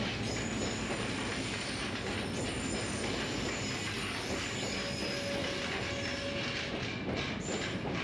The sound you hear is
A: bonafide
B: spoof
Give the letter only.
A